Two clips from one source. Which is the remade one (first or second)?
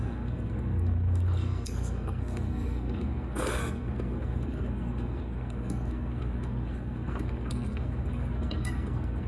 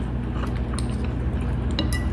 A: first